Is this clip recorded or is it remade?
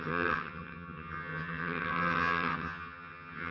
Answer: remade